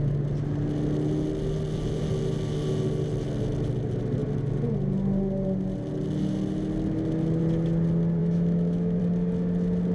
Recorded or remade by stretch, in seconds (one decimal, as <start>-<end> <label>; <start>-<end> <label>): 0.0-8.2 recorded; 8.2-9.0 remade; 9.0-9.9 recorded